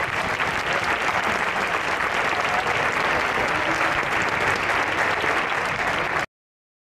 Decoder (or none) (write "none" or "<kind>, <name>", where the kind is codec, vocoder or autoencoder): none